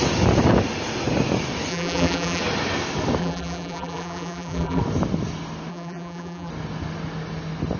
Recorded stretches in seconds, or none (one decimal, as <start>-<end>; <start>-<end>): 0.0-1.7; 2.4-3.2; 4.8-5.7; 6.5-7.8